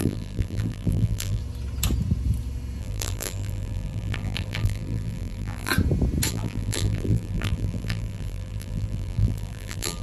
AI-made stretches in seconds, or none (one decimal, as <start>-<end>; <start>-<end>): 0.0-1.4; 2.8-5.7; 6.3-10.0